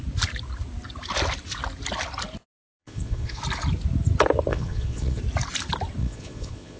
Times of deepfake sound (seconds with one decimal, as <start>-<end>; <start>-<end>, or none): 2.8-3.4; 4.5-5.2; 6.0-6.8